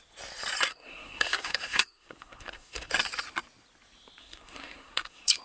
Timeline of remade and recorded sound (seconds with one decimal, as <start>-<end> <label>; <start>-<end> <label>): 0.0-0.7 recorded; 0.7-2.9 remade; 2.9-4.2 recorded; 4.2-5.4 remade